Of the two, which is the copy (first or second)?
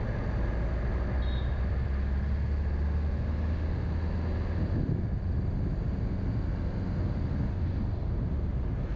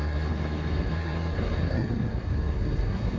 second